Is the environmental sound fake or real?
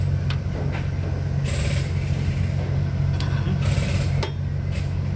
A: real